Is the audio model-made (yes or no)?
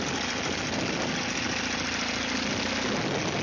no